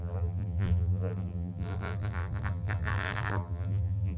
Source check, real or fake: fake